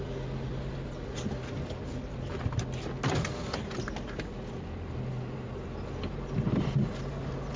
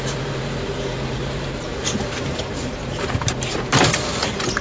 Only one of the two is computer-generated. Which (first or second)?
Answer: second